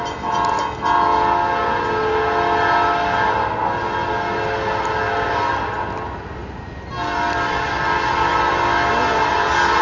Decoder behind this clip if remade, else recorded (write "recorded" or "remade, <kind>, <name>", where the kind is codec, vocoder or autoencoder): recorded